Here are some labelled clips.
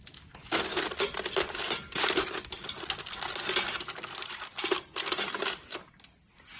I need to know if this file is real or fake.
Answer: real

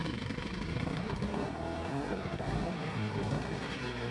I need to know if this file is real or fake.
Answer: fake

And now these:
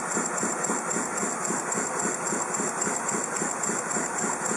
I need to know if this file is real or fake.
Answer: real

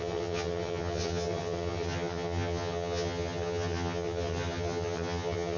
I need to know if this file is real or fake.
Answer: fake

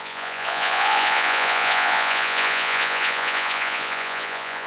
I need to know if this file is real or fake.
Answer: fake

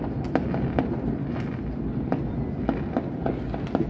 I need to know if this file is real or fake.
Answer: real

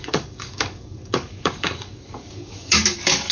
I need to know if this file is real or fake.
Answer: fake